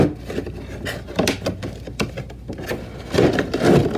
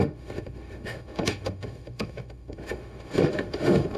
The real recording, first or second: first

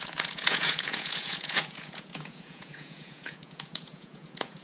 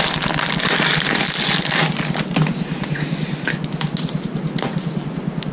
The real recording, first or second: second